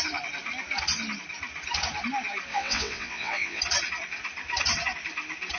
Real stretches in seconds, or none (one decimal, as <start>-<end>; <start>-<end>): 0.0-2.5; 3.6-5.6